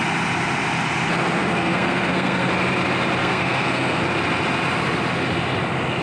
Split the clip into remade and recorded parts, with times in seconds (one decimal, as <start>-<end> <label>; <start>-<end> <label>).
0.0-1.4 recorded; 1.4-2.5 remade; 2.5-3.2 recorded; 3.2-4.0 remade; 4.0-6.0 recorded